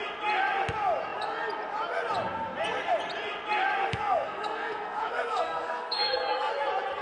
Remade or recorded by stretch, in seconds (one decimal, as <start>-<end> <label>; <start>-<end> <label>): 0.0-3.9 recorded; 3.9-6.5 remade; 6.5-7.0 recorded